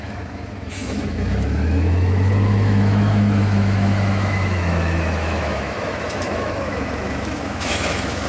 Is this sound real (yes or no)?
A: no